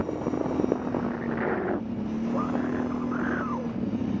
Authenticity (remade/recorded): recorded